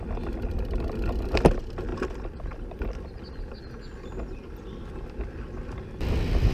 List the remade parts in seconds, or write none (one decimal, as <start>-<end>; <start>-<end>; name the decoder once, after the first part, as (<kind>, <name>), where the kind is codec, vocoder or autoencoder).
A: 1.9-2.4 (vocoder, BigVGAN v2)